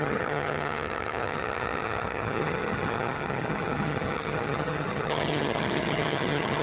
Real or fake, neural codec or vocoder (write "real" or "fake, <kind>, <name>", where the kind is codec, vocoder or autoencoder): fake, vocoder, HiFi-GAN